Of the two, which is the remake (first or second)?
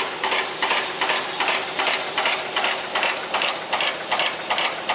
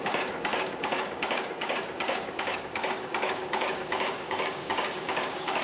second